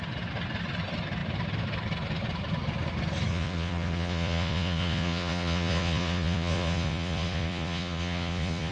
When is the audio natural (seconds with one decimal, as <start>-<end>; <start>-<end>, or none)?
0.0-3.3